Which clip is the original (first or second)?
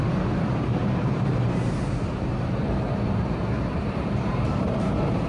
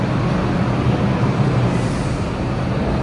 second